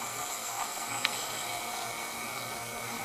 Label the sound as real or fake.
fake